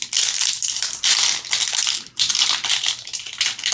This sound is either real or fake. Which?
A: real